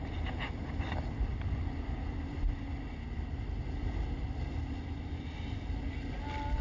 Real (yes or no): yes